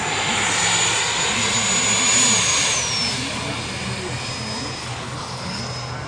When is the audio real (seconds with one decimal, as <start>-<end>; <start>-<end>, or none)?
0.0-4.8; 5.6-6.1